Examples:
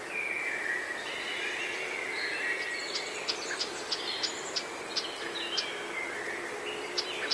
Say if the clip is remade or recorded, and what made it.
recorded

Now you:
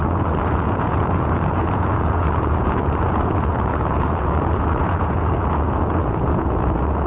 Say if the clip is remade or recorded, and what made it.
remade, vocoder, Vocos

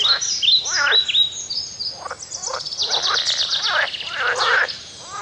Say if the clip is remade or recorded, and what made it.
recorded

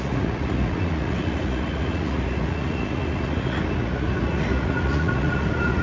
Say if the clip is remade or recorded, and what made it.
remade, vocoder, Vocos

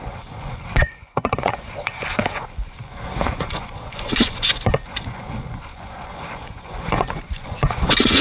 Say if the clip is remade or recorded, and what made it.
remade, vocoder, Vocos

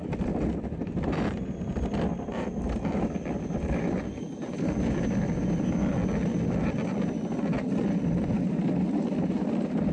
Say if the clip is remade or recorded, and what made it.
recorded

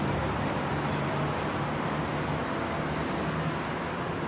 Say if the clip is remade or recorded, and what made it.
recorded